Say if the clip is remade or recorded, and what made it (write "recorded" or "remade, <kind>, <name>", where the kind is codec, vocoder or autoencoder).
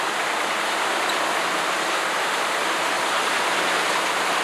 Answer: recorded